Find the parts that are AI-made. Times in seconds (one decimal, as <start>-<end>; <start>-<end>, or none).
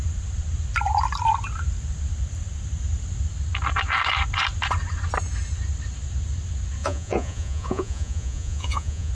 6.8-9.1